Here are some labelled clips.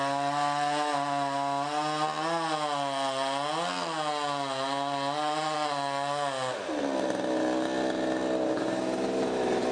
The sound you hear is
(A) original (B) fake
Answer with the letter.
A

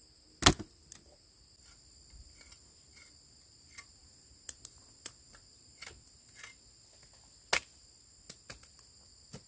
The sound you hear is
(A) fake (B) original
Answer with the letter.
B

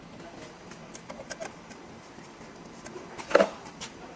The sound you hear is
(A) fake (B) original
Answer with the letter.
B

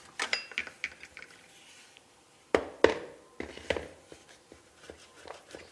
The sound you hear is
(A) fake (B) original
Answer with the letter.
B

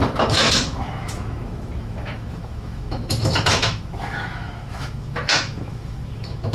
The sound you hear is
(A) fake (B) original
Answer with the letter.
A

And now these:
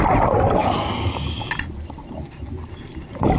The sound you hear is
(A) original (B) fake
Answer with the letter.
A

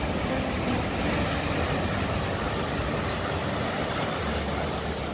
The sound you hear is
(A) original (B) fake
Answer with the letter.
A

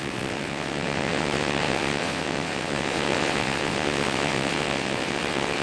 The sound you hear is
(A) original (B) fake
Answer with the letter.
B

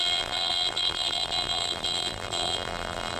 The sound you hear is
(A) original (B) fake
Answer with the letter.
B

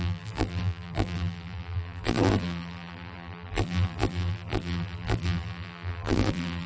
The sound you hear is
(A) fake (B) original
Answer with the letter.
A